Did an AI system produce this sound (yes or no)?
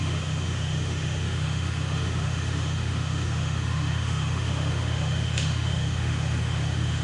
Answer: yes